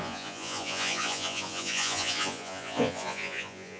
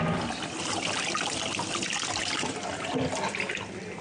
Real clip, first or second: second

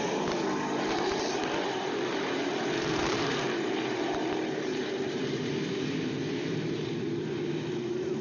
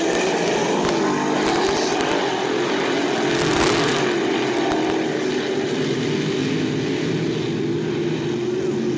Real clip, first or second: second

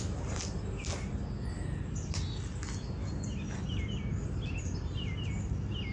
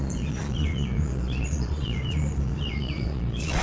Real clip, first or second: first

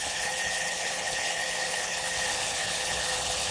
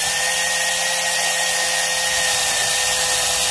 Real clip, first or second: second